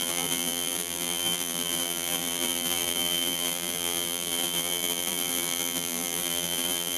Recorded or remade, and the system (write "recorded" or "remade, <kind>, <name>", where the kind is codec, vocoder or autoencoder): remade, vocoder, BigVGAN v2